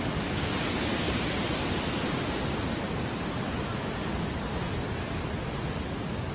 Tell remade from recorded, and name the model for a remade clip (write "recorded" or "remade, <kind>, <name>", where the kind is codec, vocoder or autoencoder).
recorded